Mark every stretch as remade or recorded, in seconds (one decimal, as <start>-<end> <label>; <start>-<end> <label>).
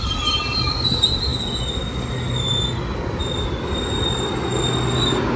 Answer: 0.0-5.4 recorded